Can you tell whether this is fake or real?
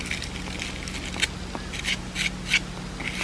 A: real